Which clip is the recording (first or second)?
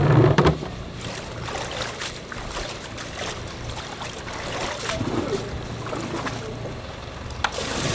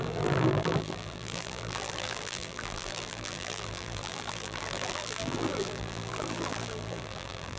first